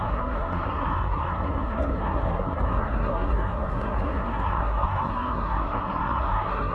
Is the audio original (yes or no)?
no